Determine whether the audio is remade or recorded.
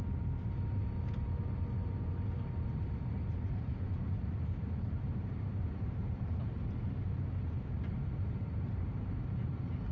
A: remade